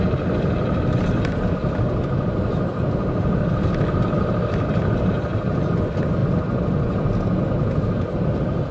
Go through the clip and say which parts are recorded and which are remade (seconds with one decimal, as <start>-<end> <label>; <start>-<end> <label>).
0.0-8.7 recorded